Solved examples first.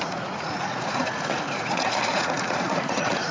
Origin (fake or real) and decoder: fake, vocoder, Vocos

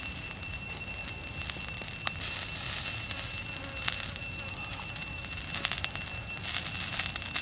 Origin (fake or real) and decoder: real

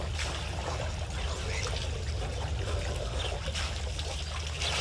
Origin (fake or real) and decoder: real